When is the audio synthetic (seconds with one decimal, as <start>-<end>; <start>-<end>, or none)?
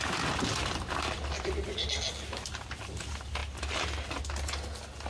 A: none